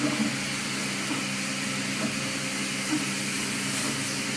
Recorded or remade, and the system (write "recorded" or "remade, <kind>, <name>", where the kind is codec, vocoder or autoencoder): recorded